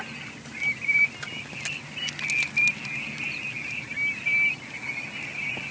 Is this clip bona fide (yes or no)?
yes